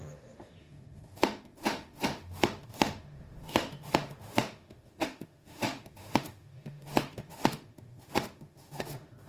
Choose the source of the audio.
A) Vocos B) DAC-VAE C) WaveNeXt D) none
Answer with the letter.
B